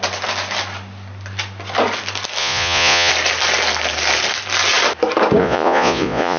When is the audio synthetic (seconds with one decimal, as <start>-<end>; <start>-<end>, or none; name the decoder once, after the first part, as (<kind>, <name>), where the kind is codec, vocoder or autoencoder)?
2.4-3.1 (vocoder, Vocos); 5.4-6.4

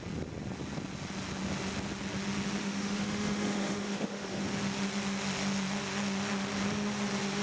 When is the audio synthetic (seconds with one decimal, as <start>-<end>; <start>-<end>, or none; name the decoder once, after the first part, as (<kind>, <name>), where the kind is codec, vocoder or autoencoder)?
2.6-4.4 (autoencoder, DAC-VAE)

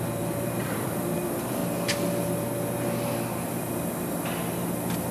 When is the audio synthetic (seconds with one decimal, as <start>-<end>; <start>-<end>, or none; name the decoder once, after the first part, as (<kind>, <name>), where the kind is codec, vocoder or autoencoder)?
0.0-1.6 (vocoder, BigVGAN v2)

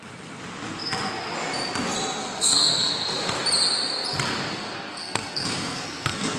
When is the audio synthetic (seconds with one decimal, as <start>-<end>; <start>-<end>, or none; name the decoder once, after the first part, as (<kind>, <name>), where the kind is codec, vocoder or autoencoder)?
2.2-2.9 (codec, SNAC); 4.5-6.4

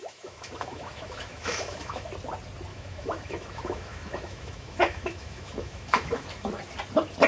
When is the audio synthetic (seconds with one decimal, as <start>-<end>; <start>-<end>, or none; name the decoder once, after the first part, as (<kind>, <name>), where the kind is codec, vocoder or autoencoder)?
0.0-2.1 (autoencoder, DAC-VAE); 2.7-6.5

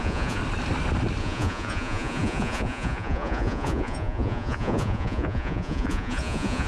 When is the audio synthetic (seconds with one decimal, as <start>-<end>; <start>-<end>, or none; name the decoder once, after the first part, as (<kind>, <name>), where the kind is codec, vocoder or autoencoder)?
0.0-0.4 (vocoder, Vocos); 1.2-6.7